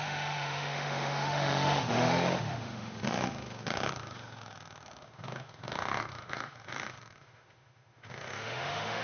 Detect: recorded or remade remade